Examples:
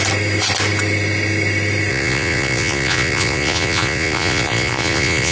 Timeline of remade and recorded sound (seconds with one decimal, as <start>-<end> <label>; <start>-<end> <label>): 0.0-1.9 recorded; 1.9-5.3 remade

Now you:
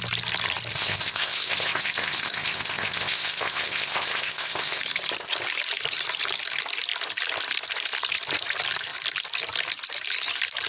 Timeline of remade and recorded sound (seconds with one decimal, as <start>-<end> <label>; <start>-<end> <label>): 0.0-0.7 recorded; 0.7-4.8 remade; 4.8-10.7 recorded

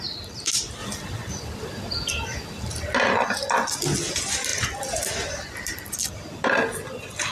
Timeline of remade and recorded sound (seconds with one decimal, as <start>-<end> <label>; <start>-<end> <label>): 0.0-7.3 recorded

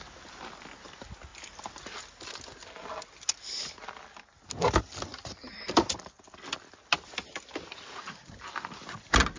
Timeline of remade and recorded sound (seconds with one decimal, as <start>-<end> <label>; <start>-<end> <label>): 0.0-9.4 recorded